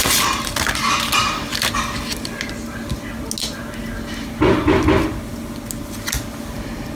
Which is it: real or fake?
real